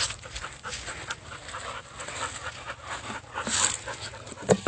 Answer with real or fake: real